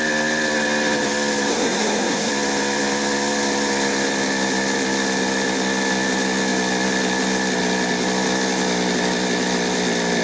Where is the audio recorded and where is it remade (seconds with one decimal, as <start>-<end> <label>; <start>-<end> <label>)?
0.0-1.5 recorded; 1.5-2.3 remade; 2.3-10.2 recorded